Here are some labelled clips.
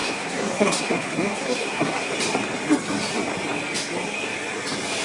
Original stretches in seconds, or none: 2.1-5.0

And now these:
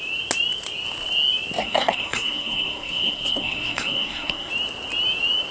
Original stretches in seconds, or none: 0.0-1.6; 4.5-5.5

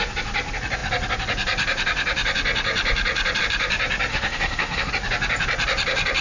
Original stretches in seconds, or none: 0.0-4.1; 4.9-6.2

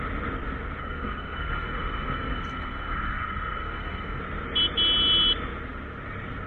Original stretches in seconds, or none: 0.0-0.8; 4.2-6.5

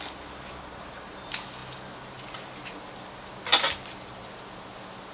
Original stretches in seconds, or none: 0.0-5.1

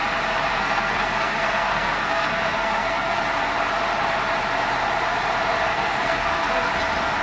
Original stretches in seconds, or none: 0.0-0.5; 3.2-5.7; 6.7-7.2

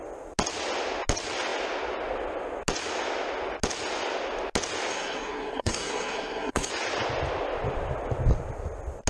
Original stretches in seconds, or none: 0.0-4.9; 6.7-9.1